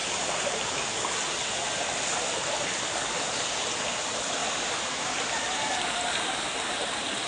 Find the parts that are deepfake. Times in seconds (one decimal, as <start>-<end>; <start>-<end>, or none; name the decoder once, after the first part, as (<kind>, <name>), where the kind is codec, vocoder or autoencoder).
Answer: 0.5-0.9 (vocoder, BigVGAN v2); 4.0-4.4; 6.2-7.3